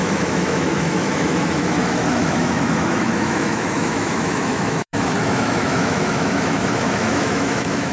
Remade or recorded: remade